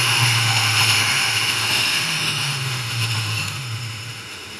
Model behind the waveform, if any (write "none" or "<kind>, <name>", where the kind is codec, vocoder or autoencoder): autoencoder, DAC-VAE